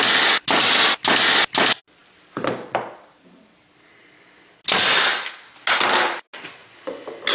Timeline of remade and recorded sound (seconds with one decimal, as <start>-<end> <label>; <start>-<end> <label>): 0.0-7.3 recorded

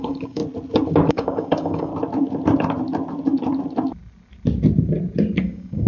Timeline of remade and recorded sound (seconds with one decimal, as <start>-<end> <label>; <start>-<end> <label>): 0.0-0.4 remade; 0.4-1.1 recorded; 1.1-1.9 remade; 1.9-5.4 recorded; 5.4-5.9 remade

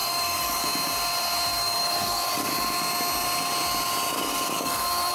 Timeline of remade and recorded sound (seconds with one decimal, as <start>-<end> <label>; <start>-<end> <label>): 0.0-0.6 remade; 0.6-1.5 recorded; 1.5-2.5 remade; 2.5-4.1 recorded; 4.1-5.1 remade

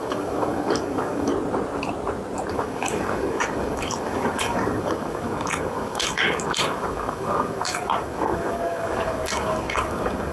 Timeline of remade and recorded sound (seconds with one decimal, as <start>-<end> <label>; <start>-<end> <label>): 0.0-1.3 remade; 1.3-2.5 recorded; 2.5-10.3 remade

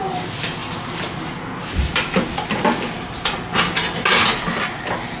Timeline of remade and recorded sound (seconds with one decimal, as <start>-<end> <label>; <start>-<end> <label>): 0.0-5.2 recorded